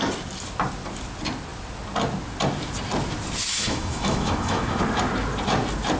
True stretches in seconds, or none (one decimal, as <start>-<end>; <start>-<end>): 0.0-3.5; 4.8-6.0